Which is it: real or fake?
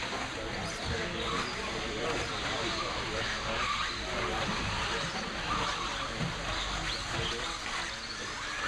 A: real